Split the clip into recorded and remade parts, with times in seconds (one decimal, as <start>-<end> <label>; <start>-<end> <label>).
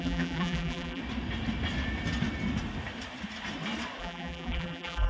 0.0-1.0 remade; 1.0-4.0 recorded; 4.0-5.1 remade